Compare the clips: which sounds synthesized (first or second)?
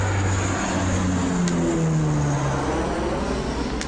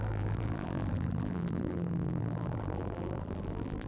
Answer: second